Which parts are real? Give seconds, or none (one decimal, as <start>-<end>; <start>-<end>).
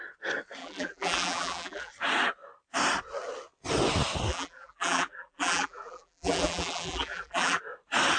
0.0-0.6; 1.9-4.3; 7.6-8.2